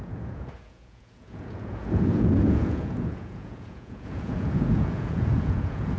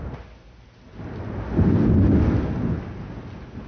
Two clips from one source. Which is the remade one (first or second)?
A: first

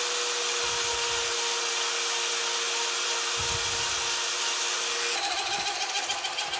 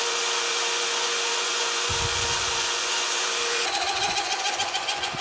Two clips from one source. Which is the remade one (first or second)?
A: second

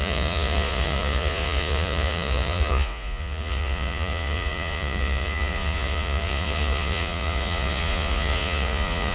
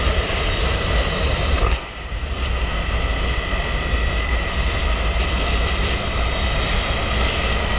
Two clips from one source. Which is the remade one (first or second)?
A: first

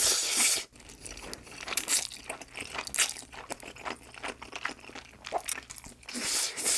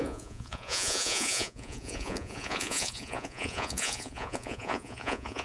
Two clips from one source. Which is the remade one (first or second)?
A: second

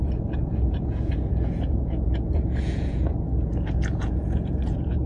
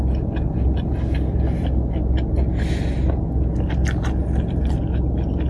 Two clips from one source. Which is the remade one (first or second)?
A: first